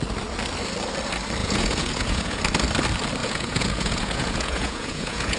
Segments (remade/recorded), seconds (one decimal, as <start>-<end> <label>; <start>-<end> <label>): 0.0-1.4 recorded; 1.4-2.4 remade; 2.4-3.2 recorded; 3.2-5.4 remade